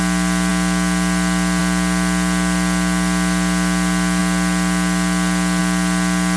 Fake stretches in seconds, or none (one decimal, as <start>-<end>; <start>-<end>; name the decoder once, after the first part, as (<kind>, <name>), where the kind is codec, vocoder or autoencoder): none